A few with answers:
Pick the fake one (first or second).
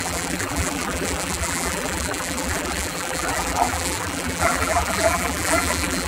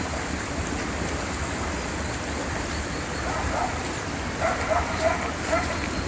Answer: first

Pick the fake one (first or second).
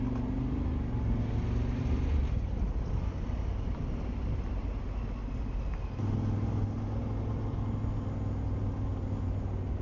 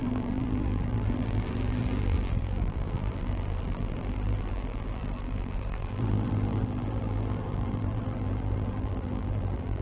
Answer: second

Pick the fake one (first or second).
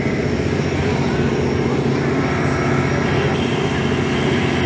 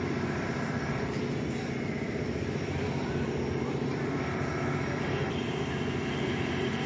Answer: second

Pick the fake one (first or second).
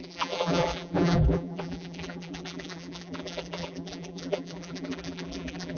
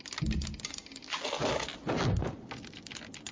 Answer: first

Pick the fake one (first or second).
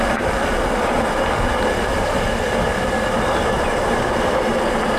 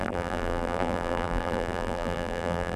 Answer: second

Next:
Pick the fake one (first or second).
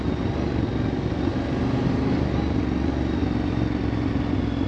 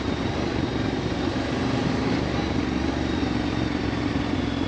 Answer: second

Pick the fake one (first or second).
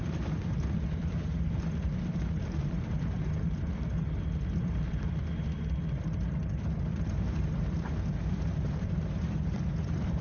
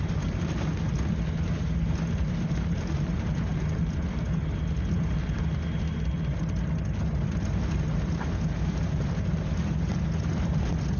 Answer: first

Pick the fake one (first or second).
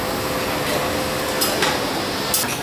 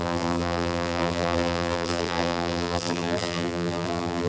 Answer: second